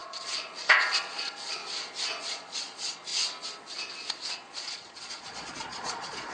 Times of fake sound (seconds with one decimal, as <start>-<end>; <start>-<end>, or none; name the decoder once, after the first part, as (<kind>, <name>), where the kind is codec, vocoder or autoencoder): 0.0-1.6 (vocoder, Vocos); 2.2-3.1; 4.3-6.3